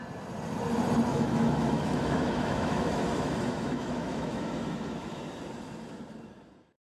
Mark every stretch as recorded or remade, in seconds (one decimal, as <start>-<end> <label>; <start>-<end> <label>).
0.0-1.1 recorded; 1.1-5.2 remade; 5.2-6.9 recorded